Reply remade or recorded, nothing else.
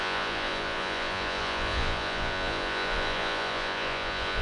remade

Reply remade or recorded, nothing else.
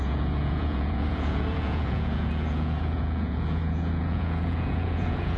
remade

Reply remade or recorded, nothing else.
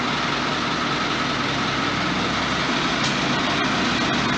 recorded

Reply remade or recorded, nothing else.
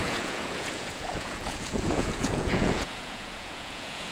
remade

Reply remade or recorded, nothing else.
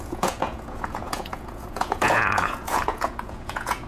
remade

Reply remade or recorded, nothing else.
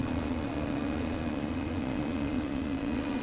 remade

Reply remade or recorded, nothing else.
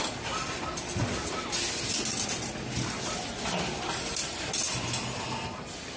recorded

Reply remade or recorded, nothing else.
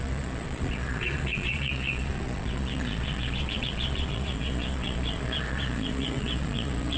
remade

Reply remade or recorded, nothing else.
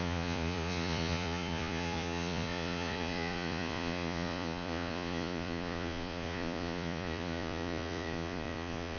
remade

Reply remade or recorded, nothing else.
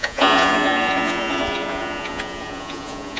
remade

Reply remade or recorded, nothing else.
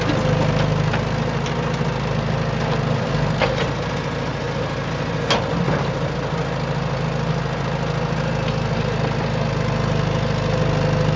recorded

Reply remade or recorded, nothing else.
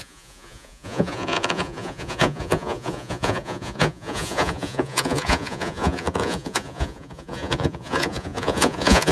remade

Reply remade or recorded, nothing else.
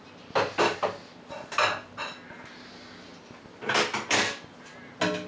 recorded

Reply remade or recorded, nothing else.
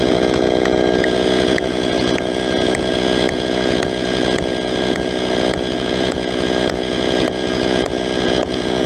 remade